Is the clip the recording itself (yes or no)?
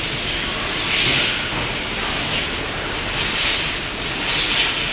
yes